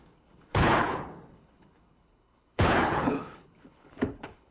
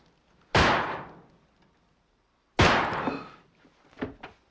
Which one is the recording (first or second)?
second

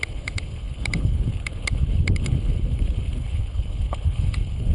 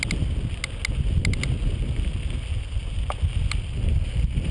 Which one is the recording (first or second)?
second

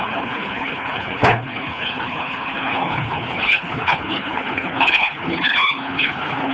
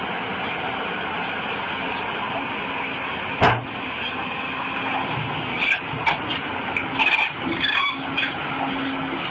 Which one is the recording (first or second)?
second